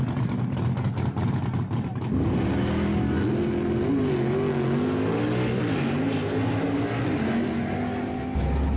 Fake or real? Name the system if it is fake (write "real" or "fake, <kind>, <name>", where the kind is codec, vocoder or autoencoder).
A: real